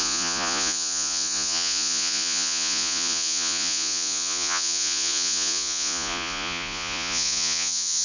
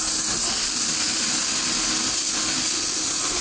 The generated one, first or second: first